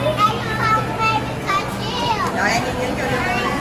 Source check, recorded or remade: recorded